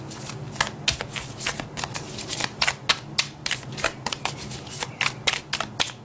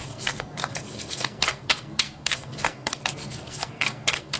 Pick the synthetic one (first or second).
second